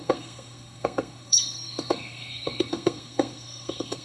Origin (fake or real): fake